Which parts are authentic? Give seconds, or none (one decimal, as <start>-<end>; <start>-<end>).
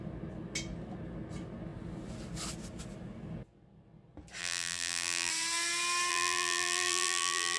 0.0-4.4; 5.3-6.1